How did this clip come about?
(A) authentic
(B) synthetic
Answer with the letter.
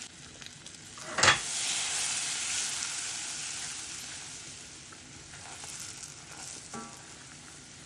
A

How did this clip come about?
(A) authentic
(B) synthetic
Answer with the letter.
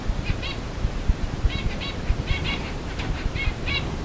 B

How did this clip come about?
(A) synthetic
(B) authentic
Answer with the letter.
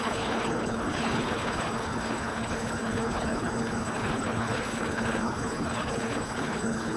A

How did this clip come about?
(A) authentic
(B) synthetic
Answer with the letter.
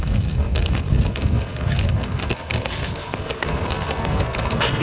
B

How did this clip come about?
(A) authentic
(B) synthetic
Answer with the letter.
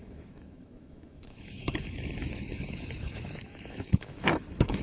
B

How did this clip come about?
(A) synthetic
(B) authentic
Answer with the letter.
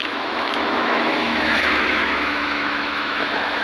A